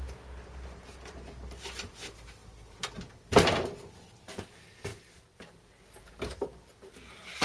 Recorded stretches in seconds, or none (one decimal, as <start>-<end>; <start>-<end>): 0.0-7.4